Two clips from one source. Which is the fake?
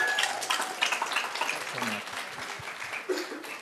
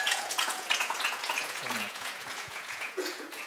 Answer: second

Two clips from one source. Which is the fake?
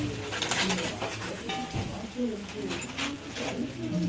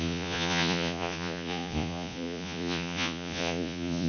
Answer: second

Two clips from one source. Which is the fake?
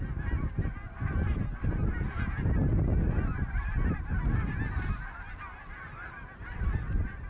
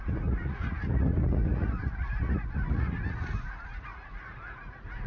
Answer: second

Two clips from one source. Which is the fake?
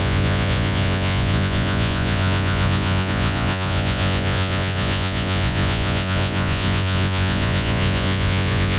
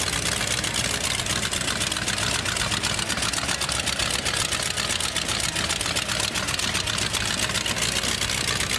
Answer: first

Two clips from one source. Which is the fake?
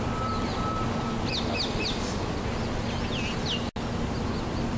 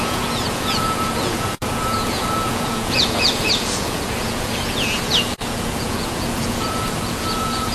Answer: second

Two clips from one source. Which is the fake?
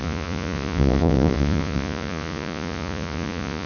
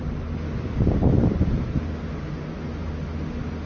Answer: first